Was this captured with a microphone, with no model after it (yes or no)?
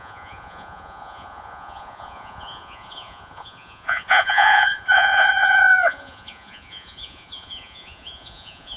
no